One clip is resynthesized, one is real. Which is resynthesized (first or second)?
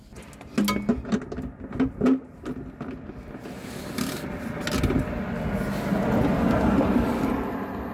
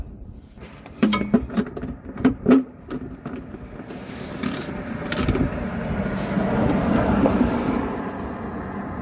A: second